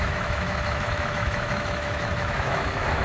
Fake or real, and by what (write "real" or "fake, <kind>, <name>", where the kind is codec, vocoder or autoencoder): fake, autoencoder, DAC-VAE